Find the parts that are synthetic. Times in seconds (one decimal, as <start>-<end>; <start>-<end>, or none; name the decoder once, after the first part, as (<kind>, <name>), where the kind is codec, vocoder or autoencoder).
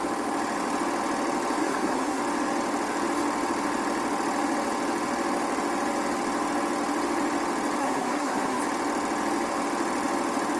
1.6-2.2 (codec, SNAC); 7.8-8.6